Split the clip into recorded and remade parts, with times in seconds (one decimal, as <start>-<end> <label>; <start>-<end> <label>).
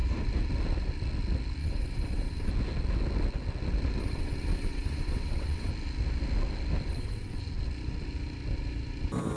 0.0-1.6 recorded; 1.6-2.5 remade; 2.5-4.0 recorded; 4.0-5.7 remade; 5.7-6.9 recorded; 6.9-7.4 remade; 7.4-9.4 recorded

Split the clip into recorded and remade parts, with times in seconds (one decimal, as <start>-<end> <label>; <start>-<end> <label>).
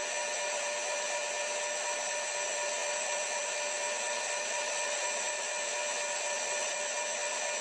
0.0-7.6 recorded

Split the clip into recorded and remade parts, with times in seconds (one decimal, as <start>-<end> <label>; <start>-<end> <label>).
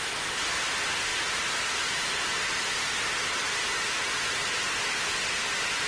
0.0-5.9 recorded